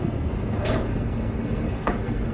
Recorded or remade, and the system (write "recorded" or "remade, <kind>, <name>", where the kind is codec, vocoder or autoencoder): remade, codec, SNAC